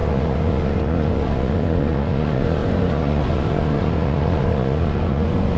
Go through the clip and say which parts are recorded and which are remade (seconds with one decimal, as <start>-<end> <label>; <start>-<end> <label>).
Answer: 0.0-5.6 remade